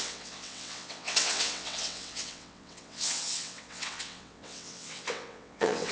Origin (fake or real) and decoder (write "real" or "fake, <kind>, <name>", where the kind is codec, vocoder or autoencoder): fake, vocoder, WaveNeXt